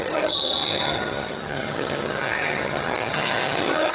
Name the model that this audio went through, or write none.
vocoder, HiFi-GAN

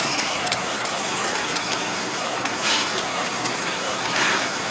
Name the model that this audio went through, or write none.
codec, SNAC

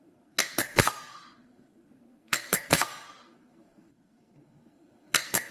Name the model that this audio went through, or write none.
codec, SNAC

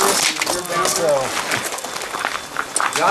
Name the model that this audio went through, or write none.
none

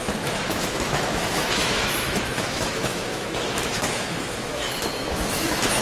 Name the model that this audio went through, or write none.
autoencoder, DAC-VAE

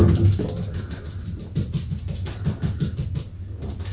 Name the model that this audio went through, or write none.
none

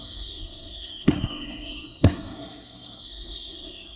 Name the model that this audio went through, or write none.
codec, SNAC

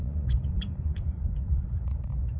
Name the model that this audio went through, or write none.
vocoder, Vocos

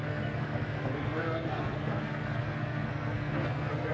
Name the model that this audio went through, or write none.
codec, SNAC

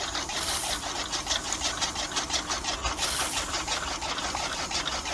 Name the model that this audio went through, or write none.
none